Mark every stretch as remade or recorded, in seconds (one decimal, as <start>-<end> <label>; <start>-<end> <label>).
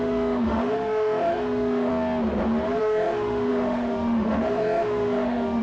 0.0-1.9 remade; 1.9-2.8 recorded; 2.8-5.6 remade